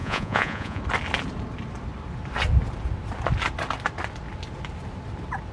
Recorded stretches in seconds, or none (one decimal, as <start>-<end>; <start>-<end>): 0.8-5.5